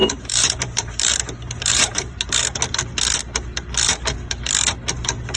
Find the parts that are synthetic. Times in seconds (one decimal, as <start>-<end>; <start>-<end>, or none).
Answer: 0.0-2.3